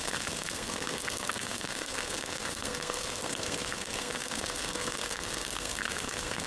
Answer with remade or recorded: remade